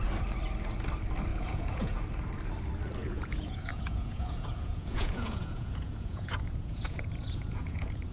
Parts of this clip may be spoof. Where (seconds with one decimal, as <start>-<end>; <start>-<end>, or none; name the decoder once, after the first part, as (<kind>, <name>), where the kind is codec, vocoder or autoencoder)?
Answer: 1.3-2.0 (vocoder, Vocos); 3.0-8.1